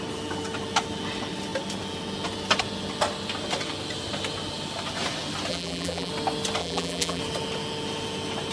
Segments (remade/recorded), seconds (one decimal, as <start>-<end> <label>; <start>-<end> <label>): 0.0-5.5 recorded; 5.5-6.1 remade; 6.1-6.6 recorded; 6.6-7.2 remade; 7.2-8.5 recorded